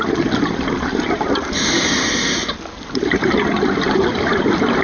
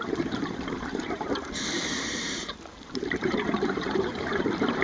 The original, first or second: first